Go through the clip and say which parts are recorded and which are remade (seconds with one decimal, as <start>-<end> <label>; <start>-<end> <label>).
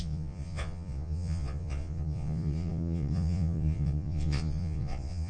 0.0-5.3 remade